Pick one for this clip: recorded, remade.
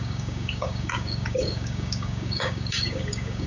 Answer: remade